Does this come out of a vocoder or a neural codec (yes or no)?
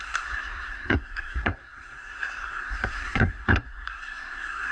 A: yes